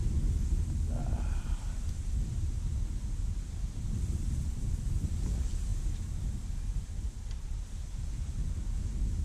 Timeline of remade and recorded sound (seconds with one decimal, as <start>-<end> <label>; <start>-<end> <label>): 0.0-9.2 recorded